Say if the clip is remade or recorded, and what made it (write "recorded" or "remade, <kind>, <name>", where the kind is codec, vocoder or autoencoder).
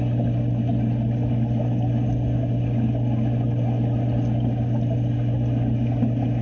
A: recorded